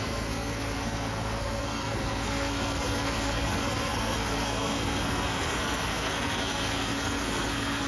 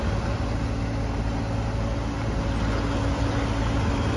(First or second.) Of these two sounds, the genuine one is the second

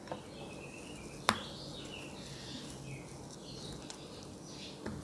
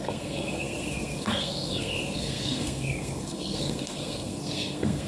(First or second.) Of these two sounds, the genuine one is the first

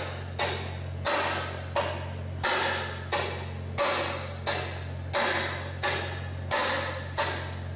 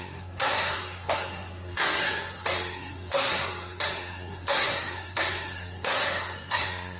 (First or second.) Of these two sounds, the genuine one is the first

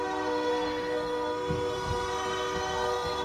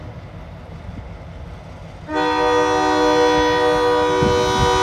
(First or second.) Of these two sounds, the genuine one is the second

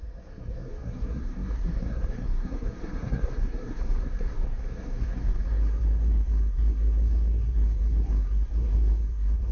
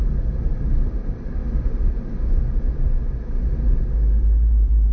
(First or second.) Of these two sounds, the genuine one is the second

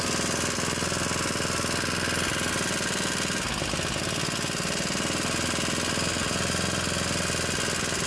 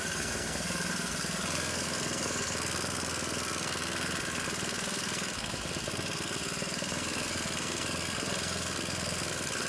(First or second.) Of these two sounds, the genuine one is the first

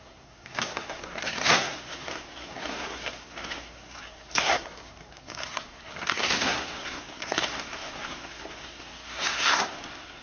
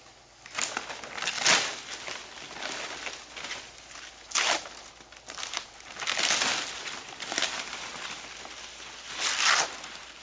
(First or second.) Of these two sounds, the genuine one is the second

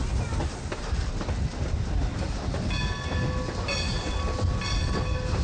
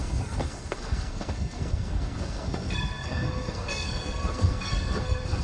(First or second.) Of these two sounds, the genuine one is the first